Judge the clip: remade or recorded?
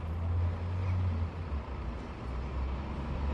recorded